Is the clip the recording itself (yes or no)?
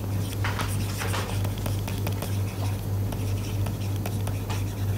yes